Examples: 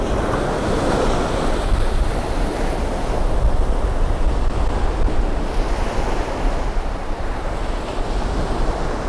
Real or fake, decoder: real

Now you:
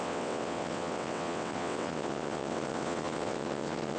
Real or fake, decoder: fake, vocoder, WaveNeXt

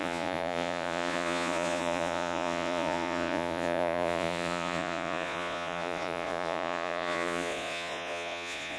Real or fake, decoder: fake, vocoder, Vocos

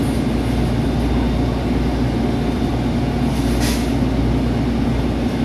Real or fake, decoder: real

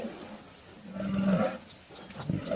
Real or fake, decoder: real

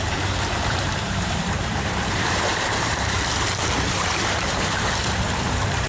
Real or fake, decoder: fake, vocoder, BigVGAN v2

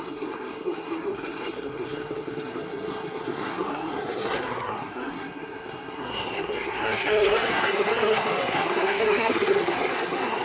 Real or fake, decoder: fake, codec, SNAC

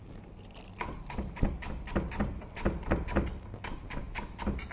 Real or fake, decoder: real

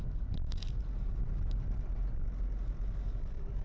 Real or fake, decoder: real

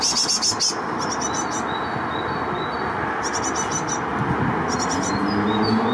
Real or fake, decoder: real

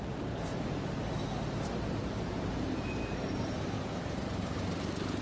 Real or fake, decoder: fake, vocoder, BigVGAN v2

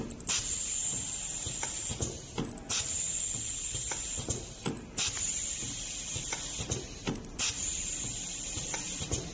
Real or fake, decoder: real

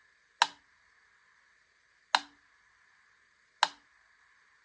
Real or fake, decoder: real